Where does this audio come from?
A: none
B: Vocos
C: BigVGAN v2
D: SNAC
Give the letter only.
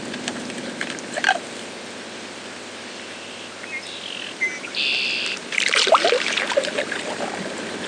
A